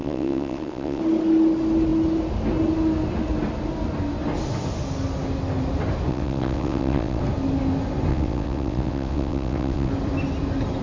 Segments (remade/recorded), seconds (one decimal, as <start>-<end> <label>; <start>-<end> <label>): 0.0-1.0 remade; 1.0-6.1 recorded; 6.1-7.2 remade; 7.2-8.1 recorded; 8.1-9.9 remade; 9.9-10.8 recorded